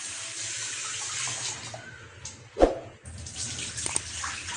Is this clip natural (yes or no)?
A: yes